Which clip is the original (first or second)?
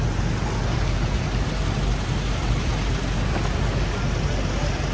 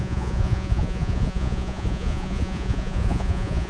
first